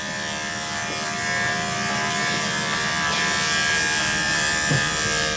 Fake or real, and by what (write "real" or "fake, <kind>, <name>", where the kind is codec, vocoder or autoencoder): real